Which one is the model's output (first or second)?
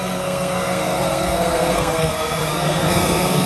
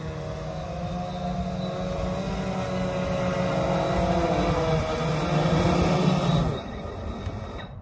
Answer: first